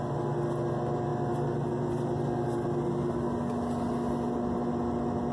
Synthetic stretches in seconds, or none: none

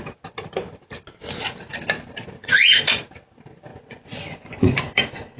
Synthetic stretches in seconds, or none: 2.4-3.0 (vocoder, Vocos); 3.7-5.4